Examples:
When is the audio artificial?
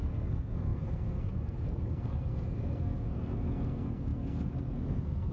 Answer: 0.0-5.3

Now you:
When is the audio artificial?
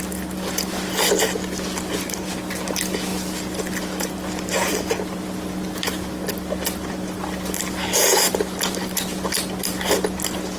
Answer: none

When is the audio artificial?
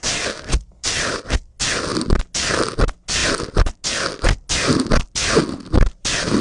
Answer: none